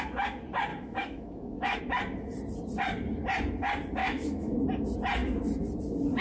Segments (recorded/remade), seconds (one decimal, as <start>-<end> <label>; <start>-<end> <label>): 0.0-0.7 recorded; 0.7-1.8 remade; 1.8-4.0 recorded; 4.0-4.6 remade; 4.6-6.2 recorded